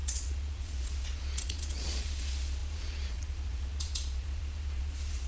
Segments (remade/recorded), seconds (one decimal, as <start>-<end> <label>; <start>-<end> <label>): 0.0-5.3 remade